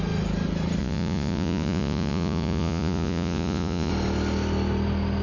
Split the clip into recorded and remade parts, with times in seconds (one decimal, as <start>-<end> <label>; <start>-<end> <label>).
0.0-0.8 recorded; 0.8-3.9 remade; 3.9-5.2 recorded